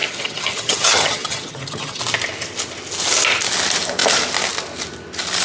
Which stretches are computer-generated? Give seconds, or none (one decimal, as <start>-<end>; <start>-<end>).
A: 0.0-2.0